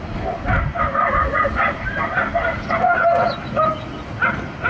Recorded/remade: recorded